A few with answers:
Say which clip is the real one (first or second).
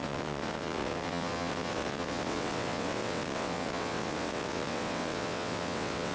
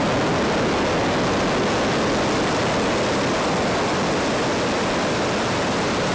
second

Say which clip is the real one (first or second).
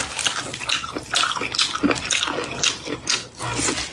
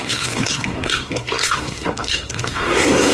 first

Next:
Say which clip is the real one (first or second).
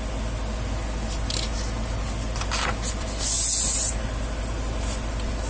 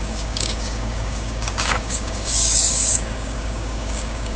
first